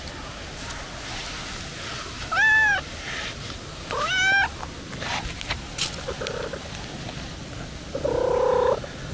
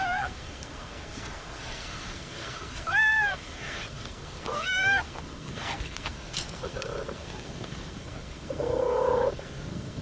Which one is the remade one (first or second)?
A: second